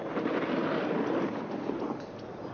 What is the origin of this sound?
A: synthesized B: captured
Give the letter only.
B